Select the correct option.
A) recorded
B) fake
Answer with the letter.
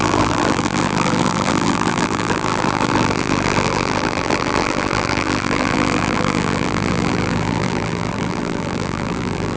B